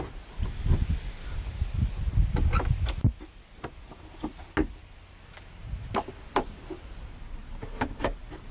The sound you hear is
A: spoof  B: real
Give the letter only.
B